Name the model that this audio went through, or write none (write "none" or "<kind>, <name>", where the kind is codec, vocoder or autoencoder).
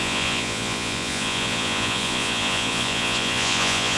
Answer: vocoder, Vocos